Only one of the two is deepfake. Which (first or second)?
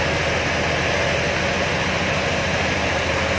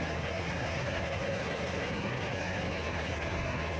second